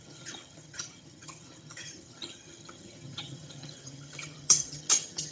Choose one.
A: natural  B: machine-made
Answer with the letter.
B